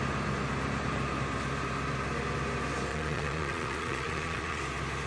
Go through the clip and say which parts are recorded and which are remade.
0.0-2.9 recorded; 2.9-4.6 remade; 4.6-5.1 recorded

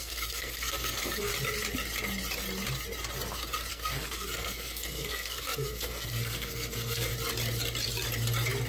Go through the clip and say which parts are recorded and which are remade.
0.0-1.3 remade; 1.3-3.7 recorded; 3.7-7.1 remade; 7.1-8.7 recorded

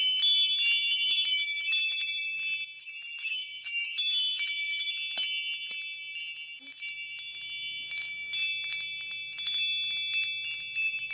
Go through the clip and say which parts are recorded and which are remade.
0.0-1.3 recorded; 1.3-2.4 remade; 2.4-2.8 recorded; 2.8-4.9 remade; 4.9-11.1 recorded